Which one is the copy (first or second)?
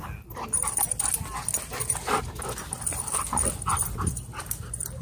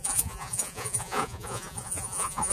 second